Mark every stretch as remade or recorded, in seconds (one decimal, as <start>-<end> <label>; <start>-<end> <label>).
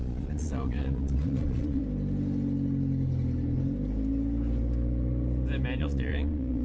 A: 0.0-1.8 remade; 1.8-5.8 recorded; 5.8-6.6 remade